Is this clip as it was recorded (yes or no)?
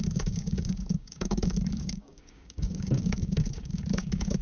no